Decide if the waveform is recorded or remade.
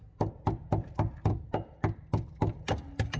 recorded